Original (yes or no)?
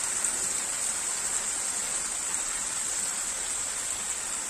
yes